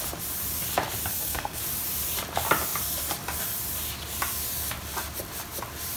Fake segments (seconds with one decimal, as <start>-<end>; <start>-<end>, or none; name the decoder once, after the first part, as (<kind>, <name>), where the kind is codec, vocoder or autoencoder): 1.1-1.6 (codec, SNAC)